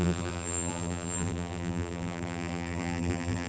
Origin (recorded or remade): remade